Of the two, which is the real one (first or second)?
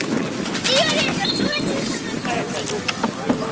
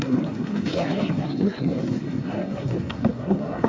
first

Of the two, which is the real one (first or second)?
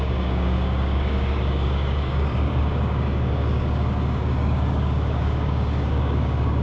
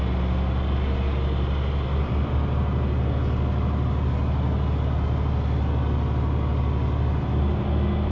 second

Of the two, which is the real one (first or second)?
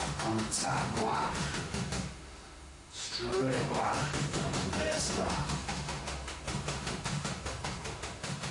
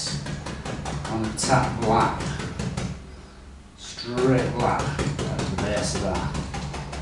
second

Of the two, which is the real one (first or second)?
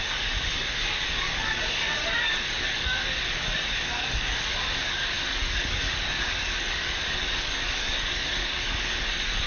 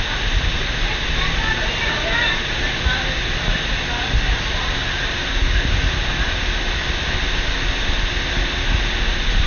second